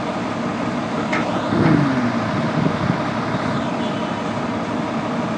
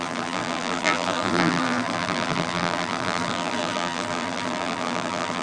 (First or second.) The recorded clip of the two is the first